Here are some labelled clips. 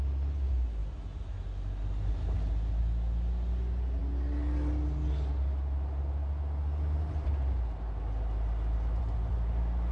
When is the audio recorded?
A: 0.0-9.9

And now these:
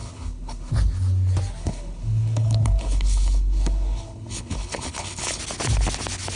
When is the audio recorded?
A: 0.7-1.6; 5.4-6.4

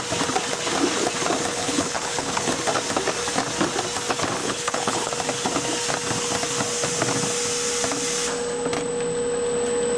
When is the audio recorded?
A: 0.0-1.5; 2.5-4.4; 5.1-10.0

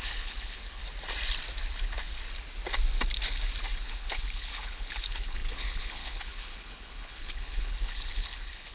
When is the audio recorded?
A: 0.8-3.8

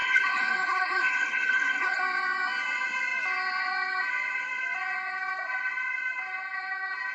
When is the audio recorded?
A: 2.0-7.1

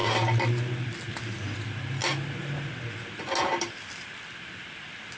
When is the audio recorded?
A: 0.0-5.2